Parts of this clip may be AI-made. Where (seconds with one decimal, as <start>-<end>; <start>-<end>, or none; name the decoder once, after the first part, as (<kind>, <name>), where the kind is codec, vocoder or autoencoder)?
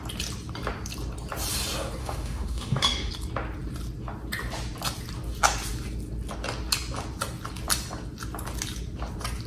2.0-3.1 (autoencoder, DAC-VAE)